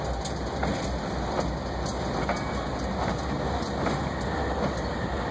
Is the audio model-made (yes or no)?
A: no